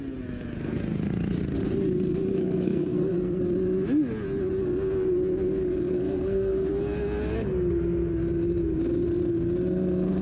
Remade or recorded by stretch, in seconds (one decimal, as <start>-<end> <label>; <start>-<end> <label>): 0.0-2.3 recorded; 2.3-3.4 remade; 3.4-5.9 recorded; 5.9-6.7 remade; 6.7-10.2 recorded